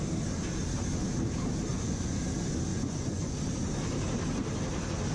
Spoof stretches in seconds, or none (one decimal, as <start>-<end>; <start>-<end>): 1.7-2.2; 2.7-3.3